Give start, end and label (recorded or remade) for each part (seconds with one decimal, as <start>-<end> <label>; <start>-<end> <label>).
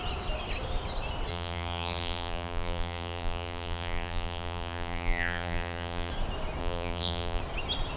0.0-1.3 recorded; 1.3-6.1 remade; 6.1-6.6 recorded; 6.6-7.4 remade; 7.4-8.0 recorded